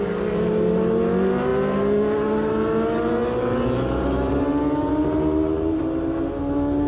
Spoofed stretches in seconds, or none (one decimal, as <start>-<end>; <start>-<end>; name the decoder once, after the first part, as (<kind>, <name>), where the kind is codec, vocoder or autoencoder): none